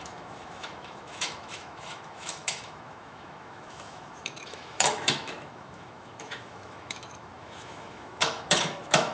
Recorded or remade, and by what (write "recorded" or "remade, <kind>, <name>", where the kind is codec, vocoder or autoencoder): remade, autoencoder, DAC-VAE